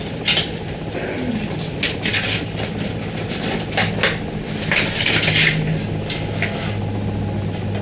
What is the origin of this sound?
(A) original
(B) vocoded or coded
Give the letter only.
A